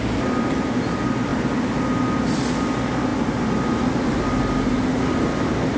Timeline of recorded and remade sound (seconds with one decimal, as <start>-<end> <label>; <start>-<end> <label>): 0.0-5.8 recorded